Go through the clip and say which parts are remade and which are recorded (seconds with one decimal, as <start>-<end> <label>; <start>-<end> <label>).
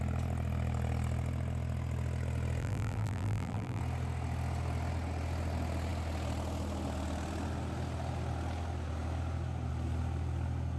0.0-2.6 recorded; 2.6-3.8 remade; 3.8-10.8 recorded